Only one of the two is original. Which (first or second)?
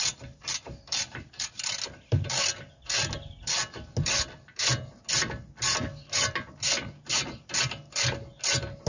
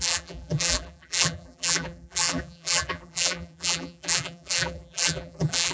first